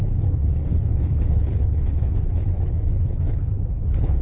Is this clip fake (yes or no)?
yes